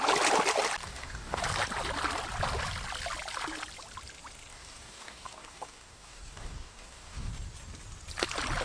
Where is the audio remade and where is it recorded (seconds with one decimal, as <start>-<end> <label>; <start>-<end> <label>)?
0.0-0.8 recorded; 0.8-1.4 remade; 1.4-4.5 recorded; 4.5-7.3 remade; 7.3-8.6 recorded